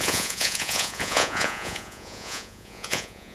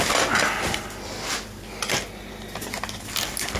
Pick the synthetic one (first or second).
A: first